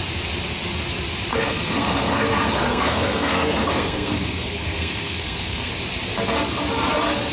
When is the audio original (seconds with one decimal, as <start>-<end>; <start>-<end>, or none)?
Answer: 0.0-1.3; 5.7-7.3